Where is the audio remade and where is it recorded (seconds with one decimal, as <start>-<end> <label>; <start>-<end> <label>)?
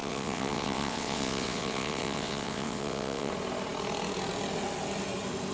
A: 0.0-3.3 remade; 3.3-5.5 recorded